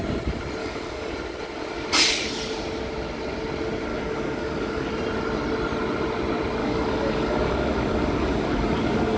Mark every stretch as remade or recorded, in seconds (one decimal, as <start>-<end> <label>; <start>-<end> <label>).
0.0-0.6 recorded; 0.6-1.1 remade; 1.1-3.9 recorded; 3.9-4.9 remade; 4.9-6.6 recorded; 6.6-9.2 remade